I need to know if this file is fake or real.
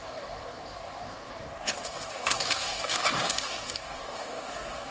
fake